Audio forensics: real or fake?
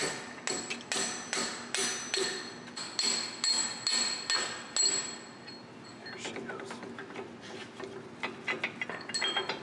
real